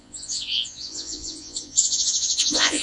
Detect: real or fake fake